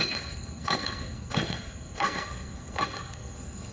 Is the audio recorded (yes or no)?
no